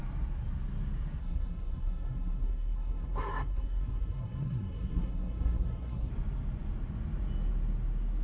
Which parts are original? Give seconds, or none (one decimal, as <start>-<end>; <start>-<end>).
0.0-1.2; 6.1-8.2